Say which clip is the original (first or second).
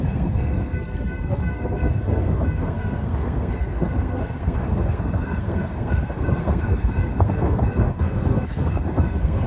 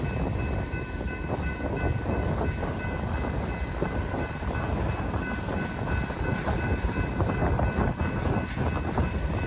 second